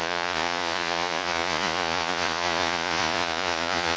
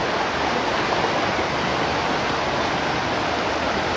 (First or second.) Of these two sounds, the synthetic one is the first